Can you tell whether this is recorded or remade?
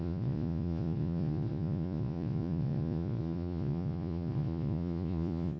remade